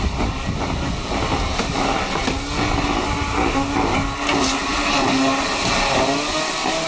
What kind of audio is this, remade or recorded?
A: recorded